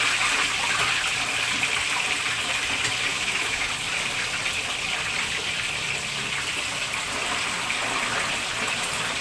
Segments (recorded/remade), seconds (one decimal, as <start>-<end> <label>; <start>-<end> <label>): 0.0-3.1 recorded; 3.1-3.7 remade; 3.7-9.2 recorded